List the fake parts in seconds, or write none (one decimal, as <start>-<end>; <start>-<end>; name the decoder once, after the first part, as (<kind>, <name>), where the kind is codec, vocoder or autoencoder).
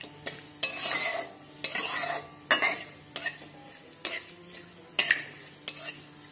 none